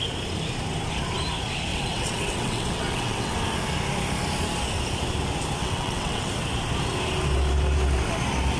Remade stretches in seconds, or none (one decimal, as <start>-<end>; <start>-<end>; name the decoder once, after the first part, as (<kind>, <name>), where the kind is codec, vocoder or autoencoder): 1.7-3.3 (vocoder, WaveNeXt); 5.6-6.3